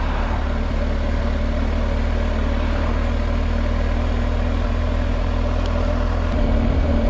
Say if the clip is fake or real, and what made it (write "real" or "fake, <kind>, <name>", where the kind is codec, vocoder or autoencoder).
real